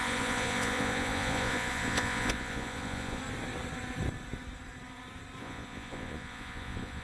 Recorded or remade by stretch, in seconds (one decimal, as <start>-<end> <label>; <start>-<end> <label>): 0.0-3.2 remade; 3.2-5.4 recorded; 5.4-7.0 remade